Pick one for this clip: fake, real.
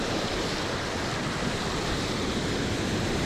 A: real